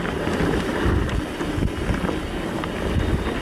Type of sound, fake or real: real